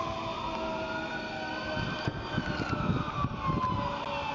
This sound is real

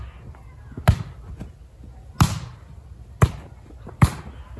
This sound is real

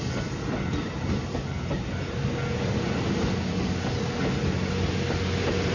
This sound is real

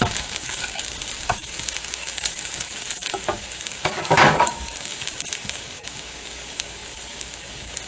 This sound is fake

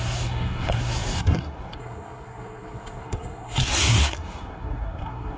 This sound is fake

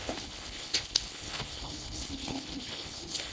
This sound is fake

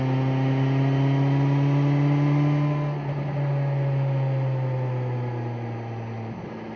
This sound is real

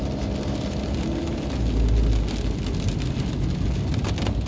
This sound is real